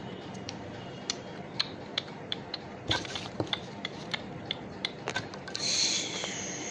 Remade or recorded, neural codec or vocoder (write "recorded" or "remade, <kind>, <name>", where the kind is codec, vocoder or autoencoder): remade, vocoder, BigVGAN v2